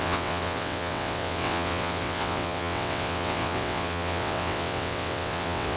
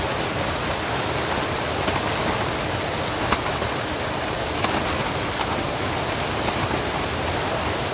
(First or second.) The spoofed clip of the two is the first